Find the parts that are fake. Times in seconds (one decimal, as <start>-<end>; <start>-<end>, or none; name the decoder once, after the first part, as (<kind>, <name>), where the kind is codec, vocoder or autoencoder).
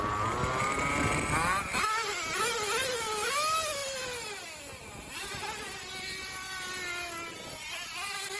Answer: none